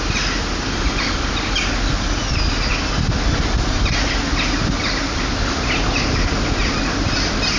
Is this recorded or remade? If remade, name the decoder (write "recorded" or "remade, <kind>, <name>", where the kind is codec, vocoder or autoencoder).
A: recorded